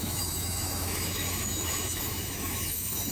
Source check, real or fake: fake